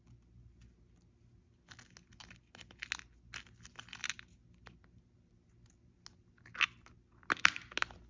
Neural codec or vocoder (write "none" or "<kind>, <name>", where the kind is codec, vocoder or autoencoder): none